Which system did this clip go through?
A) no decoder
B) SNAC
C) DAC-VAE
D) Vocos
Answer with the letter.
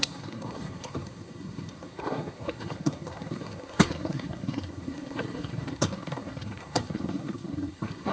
B